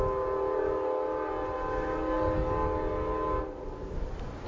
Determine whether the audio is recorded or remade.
recorded